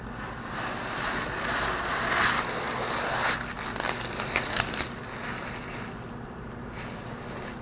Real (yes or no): yes